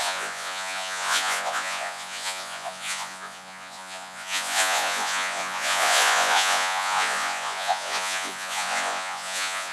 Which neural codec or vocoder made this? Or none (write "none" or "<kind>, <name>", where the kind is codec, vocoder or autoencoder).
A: vocoder, Vocos